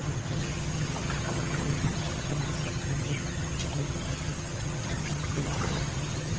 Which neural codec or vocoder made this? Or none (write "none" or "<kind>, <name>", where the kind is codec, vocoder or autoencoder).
vocoder, HiFi-GAN